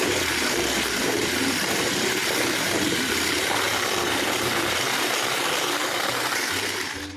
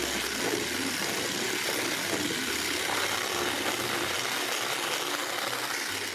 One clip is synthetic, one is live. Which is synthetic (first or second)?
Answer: first